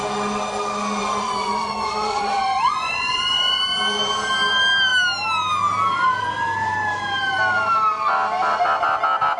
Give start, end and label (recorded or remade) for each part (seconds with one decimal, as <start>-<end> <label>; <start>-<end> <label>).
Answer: 0.0-1.0 recorded; 1.0-3.6 remade; 3.6-9.4 recorded